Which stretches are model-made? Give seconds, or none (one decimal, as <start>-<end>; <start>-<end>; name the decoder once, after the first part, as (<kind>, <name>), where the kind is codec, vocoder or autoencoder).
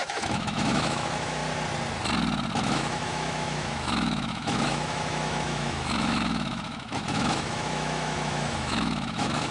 0.0-1.4 (autoencoder, DAC-VAE); 2.6-9.5